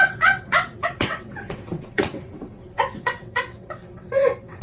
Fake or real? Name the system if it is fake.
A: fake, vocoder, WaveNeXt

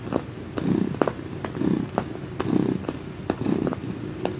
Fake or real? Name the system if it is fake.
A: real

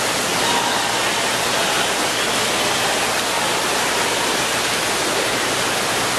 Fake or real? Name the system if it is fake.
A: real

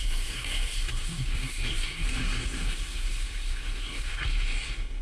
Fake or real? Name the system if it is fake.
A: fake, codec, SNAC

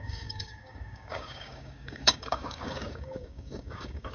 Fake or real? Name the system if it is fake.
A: fake, codec, DAC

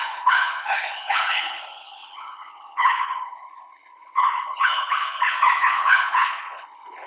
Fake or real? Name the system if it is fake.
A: fake, codec, HILCodec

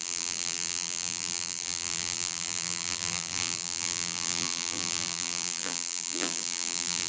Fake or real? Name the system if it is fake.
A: fake, vocoder, BigVGAN v2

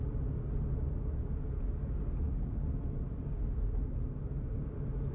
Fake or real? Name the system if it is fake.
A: real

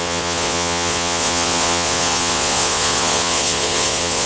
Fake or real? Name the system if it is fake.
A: fake, vocoder, Vocos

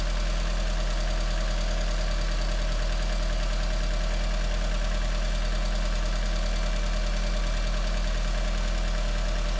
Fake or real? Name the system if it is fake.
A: real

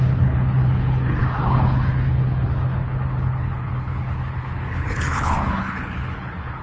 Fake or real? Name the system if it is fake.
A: fake, codec, HILCodec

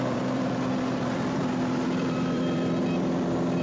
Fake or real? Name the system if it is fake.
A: fake, vocoder, BigVGAN v2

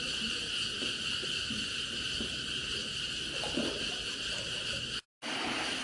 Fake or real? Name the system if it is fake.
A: real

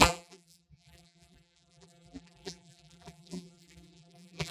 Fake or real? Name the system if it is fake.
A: fake, vocoder, BigVGAN v2